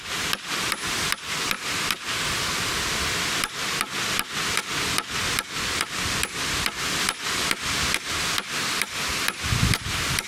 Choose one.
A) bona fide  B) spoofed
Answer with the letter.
A